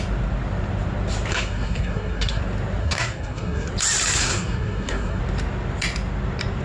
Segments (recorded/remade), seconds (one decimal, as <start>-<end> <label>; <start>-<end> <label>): 0.0-1.3 recorded; 1.3-2.4 remade; 2.4-2.8 recorded; 2.8-3.7 remade; 3.7-4.2 recorded; 4.2-5.2 remade; 5.2-6.6 recorded